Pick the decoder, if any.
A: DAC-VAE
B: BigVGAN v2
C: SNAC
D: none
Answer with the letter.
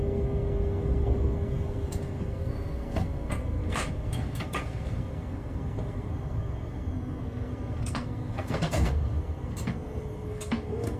C